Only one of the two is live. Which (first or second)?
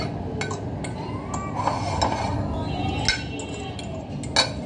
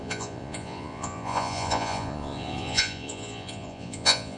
first